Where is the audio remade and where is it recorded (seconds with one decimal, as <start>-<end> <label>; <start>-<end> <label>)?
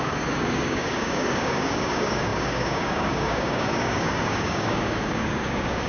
0.0-5.9 remade